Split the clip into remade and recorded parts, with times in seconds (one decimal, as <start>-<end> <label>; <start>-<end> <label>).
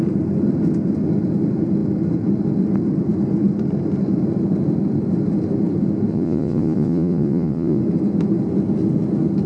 0.0-6.1 recorded; 6.1-7.8 remade; 7.8-9.5 recorded